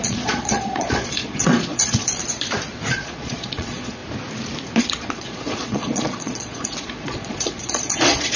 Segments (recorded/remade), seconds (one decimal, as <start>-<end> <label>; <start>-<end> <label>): 0.0-2.2 remade; 2.2-2.9 recorded; 2.9-4.0 remade; 4.0-4.8 recorded; 4.8-8.4 remade